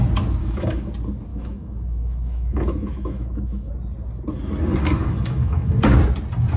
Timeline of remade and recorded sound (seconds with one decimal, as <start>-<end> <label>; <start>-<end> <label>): 0.0-0.4 recorded; 0.4-0.9 remade; 0.9-1.3 recorded; 1.3-3.7 remade; 3.7-4.8 recorded; 4.8-5.7 remade; 5.7-6.6 recorded